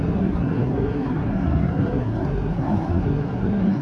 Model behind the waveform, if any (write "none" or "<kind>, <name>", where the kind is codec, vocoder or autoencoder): codec, SNAC